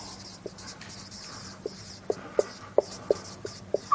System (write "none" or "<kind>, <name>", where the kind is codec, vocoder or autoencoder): none